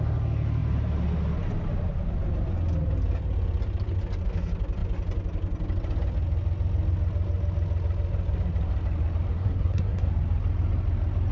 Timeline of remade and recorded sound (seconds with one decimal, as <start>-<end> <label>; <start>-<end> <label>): 0.0-9.3 recorded; 9.3-10.1 remade; 10.1-11.3 recorded